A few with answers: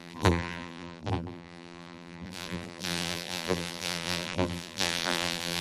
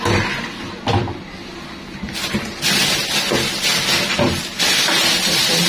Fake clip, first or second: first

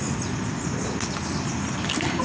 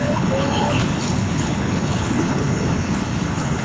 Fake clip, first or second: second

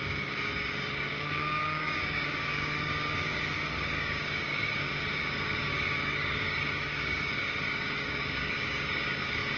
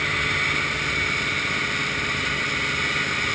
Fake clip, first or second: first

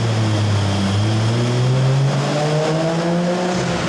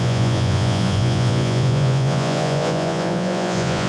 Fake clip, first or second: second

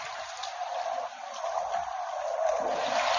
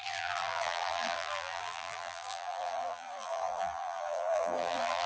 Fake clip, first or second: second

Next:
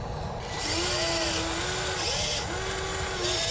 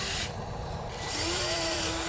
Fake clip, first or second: second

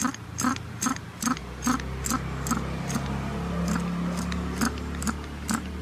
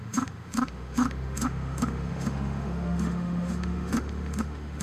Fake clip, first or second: second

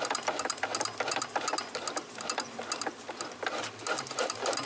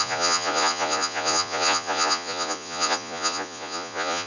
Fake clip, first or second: second